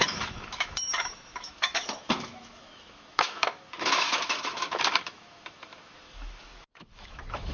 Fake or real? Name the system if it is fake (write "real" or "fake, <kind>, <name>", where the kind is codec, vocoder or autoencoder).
fake, autoencoder, DAC-VAE